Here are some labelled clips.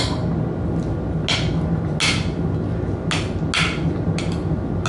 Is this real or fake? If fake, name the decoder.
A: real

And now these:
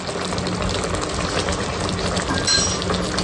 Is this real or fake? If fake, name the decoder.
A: real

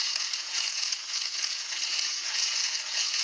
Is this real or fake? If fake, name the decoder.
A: fake, vocoder, Vocos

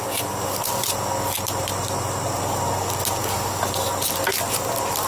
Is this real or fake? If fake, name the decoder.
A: real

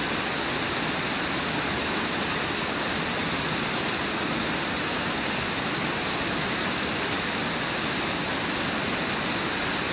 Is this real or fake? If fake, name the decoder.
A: real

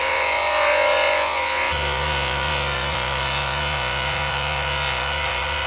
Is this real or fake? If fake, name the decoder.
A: fake, vocoder, Vocos